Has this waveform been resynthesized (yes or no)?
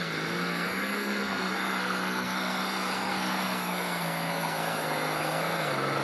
yes